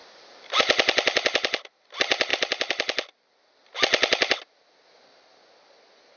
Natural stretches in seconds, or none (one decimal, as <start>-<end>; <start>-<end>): 0.0-6.2